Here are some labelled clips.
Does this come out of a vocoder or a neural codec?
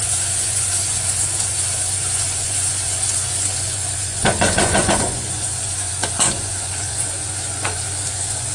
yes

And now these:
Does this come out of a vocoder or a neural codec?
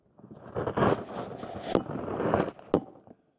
no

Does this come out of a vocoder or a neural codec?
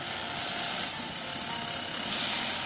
no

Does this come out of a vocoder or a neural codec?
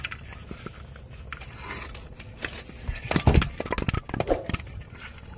no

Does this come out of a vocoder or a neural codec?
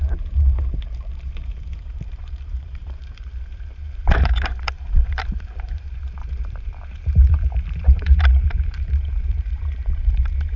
yes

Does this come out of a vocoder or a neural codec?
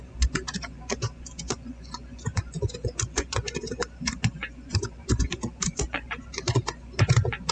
yes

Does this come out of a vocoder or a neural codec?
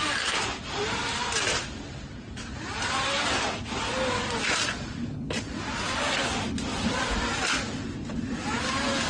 no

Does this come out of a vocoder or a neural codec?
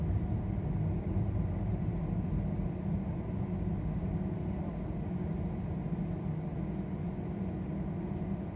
no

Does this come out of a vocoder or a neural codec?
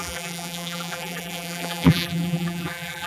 yes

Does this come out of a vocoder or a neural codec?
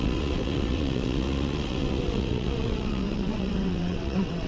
yes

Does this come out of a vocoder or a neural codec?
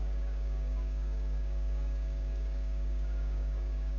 yes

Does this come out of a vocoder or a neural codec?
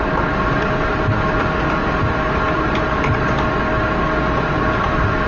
no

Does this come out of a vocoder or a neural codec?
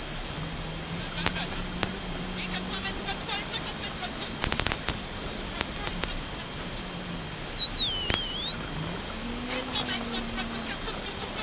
no